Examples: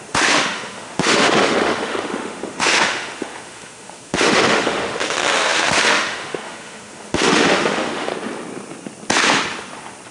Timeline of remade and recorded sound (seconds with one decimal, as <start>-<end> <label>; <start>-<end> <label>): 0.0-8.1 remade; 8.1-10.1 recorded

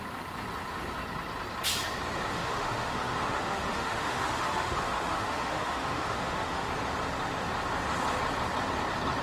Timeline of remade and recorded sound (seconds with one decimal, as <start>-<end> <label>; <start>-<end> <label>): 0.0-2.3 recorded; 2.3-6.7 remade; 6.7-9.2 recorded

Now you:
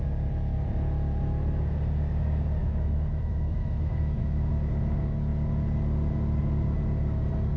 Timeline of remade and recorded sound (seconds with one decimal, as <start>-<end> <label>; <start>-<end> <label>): 0.0-2.6 recorded; 2.6-4.5 remade; 4.5-7.6 recorded

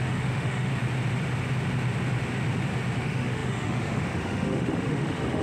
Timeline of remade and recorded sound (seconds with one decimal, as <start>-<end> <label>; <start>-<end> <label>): 0.0-0.7 remade; 0.7-3.0 recorded; 3.0-5.4 remade

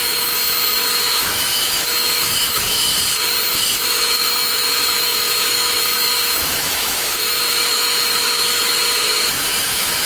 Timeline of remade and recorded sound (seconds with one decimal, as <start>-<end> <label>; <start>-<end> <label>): 0.0-2.9 remade; 2.9-3.5 recorded; 3.5-10.1 remade